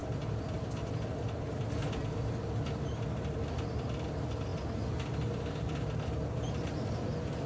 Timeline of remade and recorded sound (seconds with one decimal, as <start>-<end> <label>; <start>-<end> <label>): 0.0-7.5 recorded